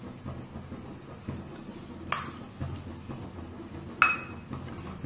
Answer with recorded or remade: recorded